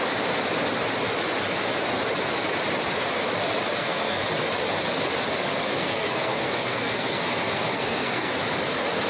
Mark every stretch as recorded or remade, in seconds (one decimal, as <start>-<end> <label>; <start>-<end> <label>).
0.0-3.7 recorded; 3.7-4.2 remade; 4.2-5.7 recorded; 5.7-8.3 remade; 8.3-9.1 recorded